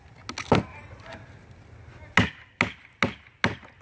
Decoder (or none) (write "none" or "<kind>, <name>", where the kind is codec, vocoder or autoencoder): none